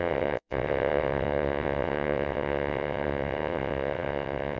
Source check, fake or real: fake